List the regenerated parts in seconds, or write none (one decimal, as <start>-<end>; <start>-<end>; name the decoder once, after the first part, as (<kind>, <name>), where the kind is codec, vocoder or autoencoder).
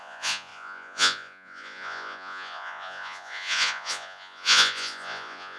0.0-5.6 (vocoder, Vocos)